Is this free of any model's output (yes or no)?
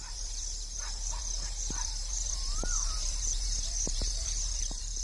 no